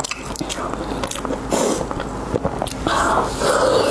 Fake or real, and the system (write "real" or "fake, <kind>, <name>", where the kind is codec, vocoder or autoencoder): real